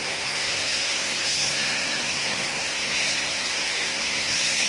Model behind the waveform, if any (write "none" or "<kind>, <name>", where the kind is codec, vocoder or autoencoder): codec, SNAC